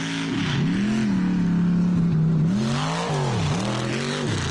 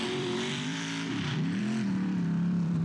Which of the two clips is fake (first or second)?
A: second